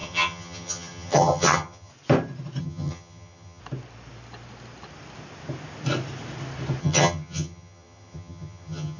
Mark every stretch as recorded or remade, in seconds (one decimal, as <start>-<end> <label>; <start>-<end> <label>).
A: 0.0-1.9 remade; 1.9-2.6 recorded; 2.6-3.6 remade; 3.6-6.8 recorded; 6.8-9.0 remade

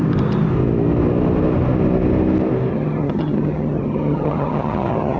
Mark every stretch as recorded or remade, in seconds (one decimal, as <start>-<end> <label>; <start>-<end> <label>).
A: 0.0-2.7 recorded; 2.7-5.2 remade

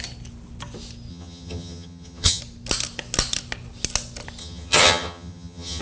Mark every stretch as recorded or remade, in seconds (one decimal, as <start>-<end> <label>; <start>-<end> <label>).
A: 0.0-1.1 recorded; 1.1-2.4 remade; 2.4-4.4 recorded; 4.4-5.8 remade

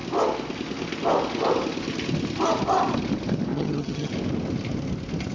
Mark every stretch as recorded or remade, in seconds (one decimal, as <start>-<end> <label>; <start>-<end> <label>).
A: 0.0-3.5 recorded; 3.5-4.1 remade; 4.1-5.3 recorded